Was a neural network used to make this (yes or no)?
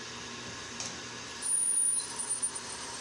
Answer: no